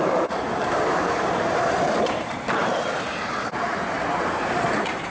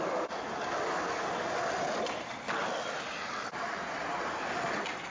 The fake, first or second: first